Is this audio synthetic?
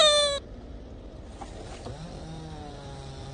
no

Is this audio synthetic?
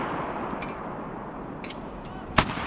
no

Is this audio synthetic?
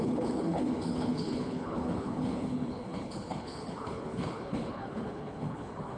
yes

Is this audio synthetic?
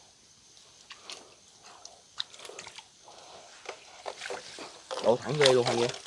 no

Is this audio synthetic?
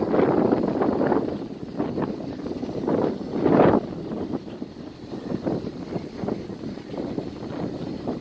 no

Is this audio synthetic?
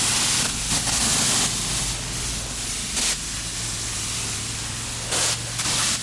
no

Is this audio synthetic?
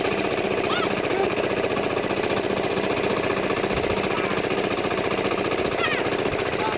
no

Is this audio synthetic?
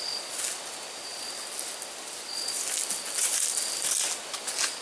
no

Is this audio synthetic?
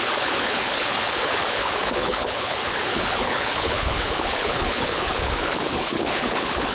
yes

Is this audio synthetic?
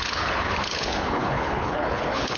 yes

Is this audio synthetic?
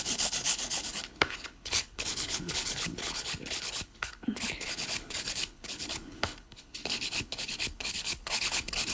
yes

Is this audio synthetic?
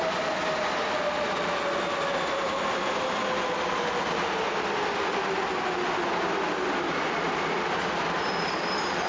no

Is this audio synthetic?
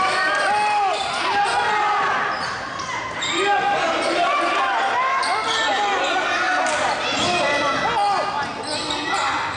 no